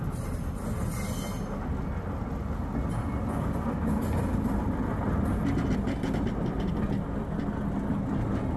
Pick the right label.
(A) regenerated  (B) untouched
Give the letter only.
B